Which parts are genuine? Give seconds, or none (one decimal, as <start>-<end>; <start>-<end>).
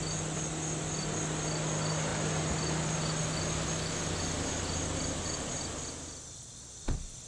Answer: 0.0-7.3